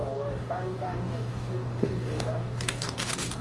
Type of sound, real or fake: fake